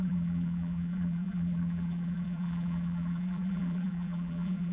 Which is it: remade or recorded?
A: remade